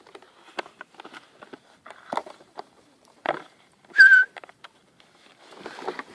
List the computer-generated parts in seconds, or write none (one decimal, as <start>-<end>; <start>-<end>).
2.2-4.8